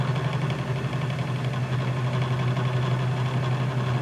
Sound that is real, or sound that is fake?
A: real